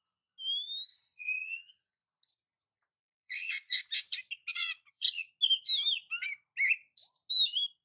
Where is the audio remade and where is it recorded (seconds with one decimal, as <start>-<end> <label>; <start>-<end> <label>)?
0.0-0.9 recorded; 0.9-1.9 remade; 1.9-2.9 recorded; 2.9-3.8 remade; 3.8-4.5 recorded; 4.5-5.3 remade; 5.3-7.8 recorded